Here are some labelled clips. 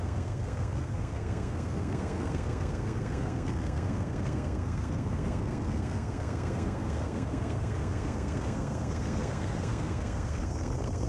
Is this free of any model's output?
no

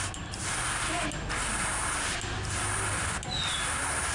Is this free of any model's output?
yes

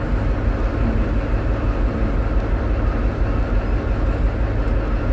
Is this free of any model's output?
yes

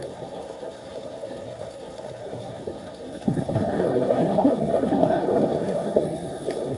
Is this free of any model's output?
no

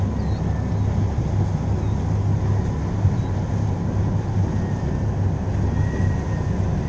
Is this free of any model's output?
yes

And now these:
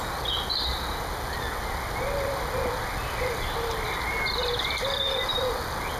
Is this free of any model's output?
yes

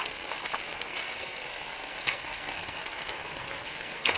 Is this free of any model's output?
no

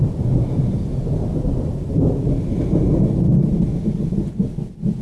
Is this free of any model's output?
yes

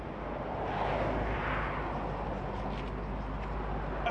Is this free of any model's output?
yes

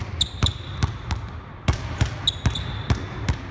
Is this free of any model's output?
yes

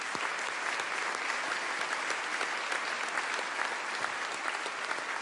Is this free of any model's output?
yes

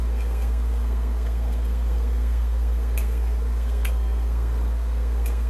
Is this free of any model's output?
no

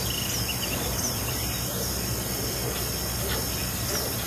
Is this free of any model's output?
yes